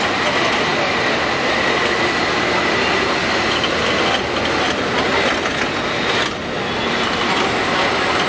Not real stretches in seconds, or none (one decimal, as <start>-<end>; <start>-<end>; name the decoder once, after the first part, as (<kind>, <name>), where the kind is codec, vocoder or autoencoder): none